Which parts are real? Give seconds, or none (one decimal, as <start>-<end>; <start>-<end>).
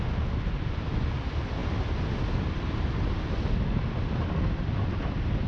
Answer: 0.0-5.5